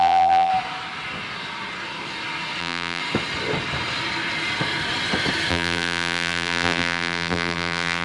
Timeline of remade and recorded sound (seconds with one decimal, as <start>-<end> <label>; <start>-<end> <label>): 0.0-0.5 remade; 0.5-2.6 recorded; 2.6-3.0 remade; 3.0-5.5 recorded; 5.5-8.0 remade